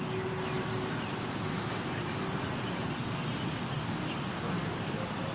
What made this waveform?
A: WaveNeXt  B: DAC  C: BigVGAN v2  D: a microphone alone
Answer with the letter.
D